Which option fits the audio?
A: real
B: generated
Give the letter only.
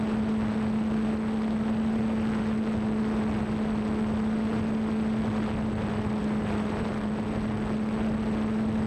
A